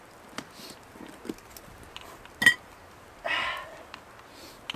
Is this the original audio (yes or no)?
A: yes